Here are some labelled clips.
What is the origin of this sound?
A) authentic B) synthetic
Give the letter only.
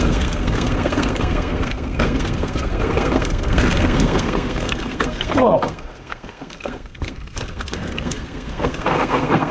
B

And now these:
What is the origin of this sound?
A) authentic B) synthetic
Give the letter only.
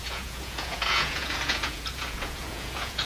B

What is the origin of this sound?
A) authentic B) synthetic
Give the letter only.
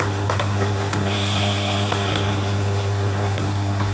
B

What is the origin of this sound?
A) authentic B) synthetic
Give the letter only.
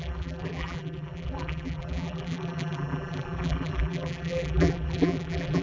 B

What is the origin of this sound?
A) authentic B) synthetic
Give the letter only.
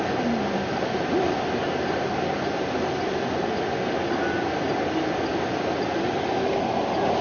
A